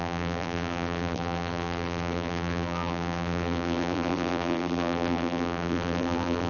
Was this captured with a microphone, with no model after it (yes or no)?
no